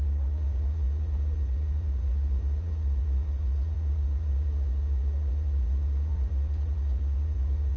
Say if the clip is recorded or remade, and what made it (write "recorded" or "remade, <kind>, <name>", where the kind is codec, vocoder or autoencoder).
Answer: remade, vocoder, Vocos